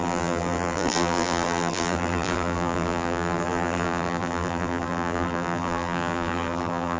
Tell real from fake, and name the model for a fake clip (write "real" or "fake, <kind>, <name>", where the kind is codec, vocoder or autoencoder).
fake, vocoder, BigVGAN v2